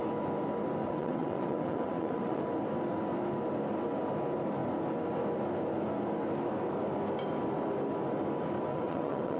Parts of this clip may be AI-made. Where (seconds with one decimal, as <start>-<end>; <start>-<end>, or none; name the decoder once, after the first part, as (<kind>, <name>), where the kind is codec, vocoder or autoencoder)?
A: 0.8-2.4 (vocoder, WaveNeXt); 8.7-9.4